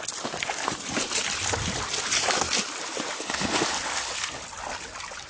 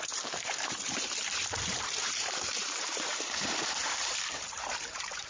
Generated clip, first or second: second